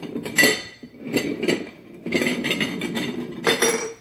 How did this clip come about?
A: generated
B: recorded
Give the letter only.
A